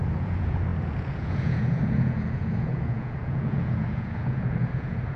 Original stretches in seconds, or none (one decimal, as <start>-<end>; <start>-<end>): none